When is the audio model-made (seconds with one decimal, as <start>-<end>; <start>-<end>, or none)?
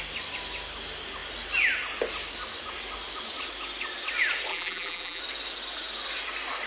4.5-5.2